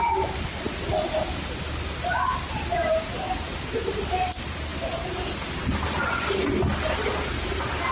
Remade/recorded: recorded